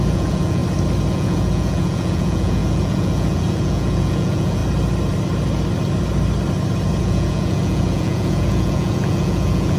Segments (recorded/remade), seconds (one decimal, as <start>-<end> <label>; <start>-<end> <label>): 0.0-0.6 remade; 0.6-1.1 recorded; 1.1-4.6 remade; 4.6-7.0 recorded; 7.0-9.8 remade